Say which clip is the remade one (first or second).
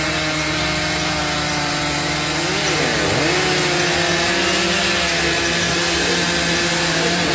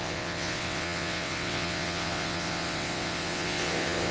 second